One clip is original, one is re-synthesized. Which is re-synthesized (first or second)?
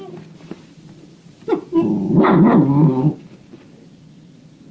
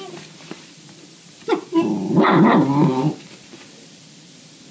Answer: second